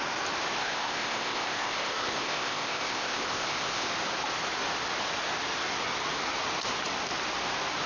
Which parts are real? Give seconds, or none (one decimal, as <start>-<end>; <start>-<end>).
0.0-0.6; 3.9-7.9